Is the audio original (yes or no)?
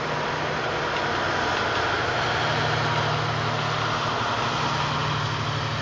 yes